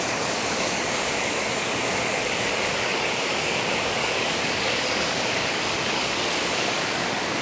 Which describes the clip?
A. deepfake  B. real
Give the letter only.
A